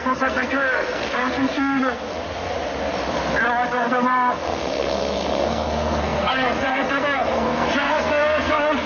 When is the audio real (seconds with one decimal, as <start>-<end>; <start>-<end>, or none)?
2.1-3.7